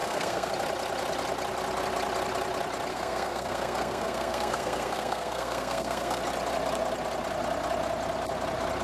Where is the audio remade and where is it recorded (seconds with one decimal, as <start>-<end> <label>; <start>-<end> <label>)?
0.0-0.5 remade; 0.5-2.9 recorded; 2.9-6.2 remade; 6.2-8.8 recorded